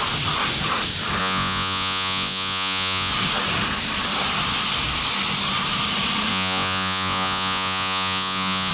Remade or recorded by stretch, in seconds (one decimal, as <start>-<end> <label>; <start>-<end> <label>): 0.0-1.2 recorded; 1.2-3.1 remade; 3.1-6.3 recorded; 6.3-8.7 remade